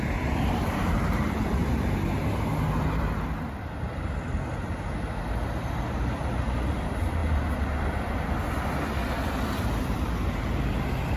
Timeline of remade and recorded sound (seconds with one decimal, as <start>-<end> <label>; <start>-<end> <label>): 0.0-1.6 remade; 1.6-6.2 recorded; 6.2-7.2 remade; 7.2-9.6 recorded; 9.6-11.2 remade